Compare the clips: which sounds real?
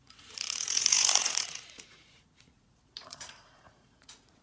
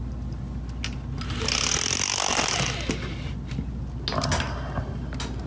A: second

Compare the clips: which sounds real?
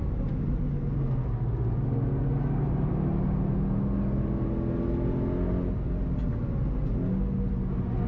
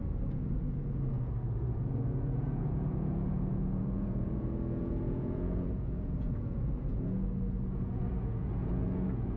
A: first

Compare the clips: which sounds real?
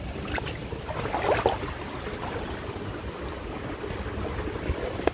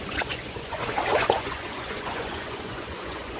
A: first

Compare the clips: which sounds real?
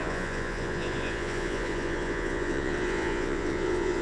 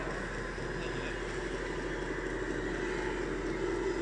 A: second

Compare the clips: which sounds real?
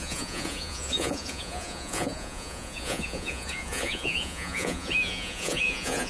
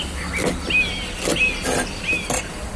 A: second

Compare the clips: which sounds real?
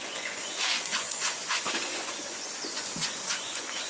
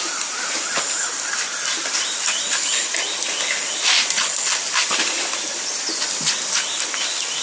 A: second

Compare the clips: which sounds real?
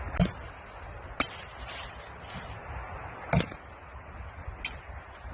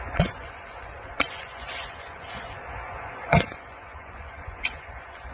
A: first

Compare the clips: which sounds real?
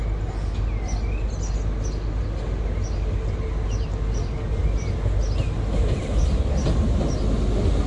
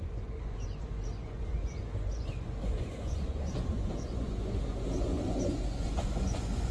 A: first